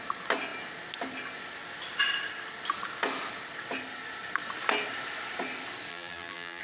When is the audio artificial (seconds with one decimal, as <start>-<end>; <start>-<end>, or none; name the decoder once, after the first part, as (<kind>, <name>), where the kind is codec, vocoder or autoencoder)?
5.9-6.6 (vocoder, BigVGAN v2)